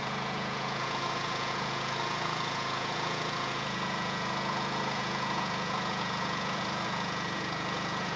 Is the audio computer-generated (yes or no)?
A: yes